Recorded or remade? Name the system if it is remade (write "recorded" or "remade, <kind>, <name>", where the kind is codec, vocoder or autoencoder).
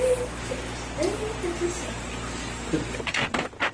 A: recorded